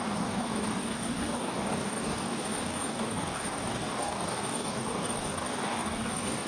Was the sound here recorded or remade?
remade